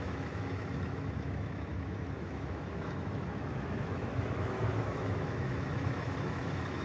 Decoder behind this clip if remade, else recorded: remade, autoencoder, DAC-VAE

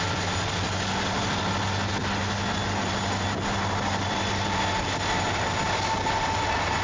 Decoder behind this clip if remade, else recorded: recorded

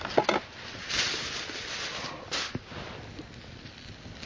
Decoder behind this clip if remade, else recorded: recorded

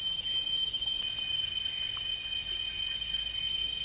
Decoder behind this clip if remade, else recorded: recorded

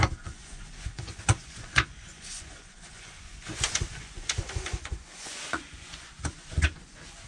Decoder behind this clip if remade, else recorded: remade, vocoder, Vocos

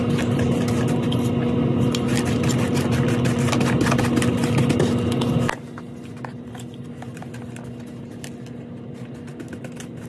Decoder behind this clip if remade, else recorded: recorded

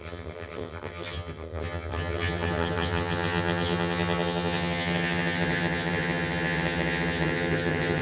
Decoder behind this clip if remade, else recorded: remade, vocoder, HiFi-GAN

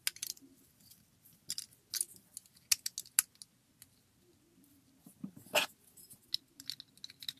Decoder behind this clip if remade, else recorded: recorded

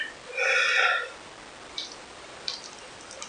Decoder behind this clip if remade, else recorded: recorded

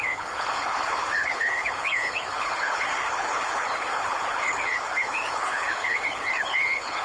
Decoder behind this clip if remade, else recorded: remade, codec, HILCodec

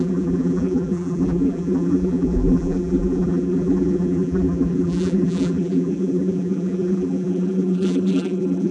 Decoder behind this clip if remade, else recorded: remade, vocoder, BigVGAN v2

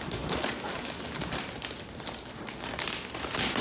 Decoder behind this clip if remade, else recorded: recorded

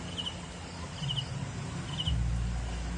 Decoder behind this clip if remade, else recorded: recorded